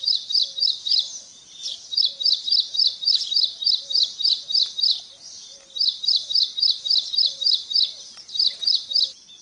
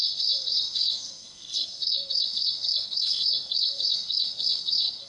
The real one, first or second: first